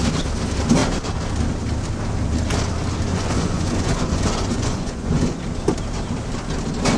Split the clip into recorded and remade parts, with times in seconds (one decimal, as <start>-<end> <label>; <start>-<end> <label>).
0.0-3.1 recorded; 3.1-5.4 remade; 5.4-7.0 recorded